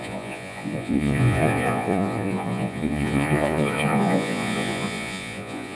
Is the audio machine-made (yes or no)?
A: yes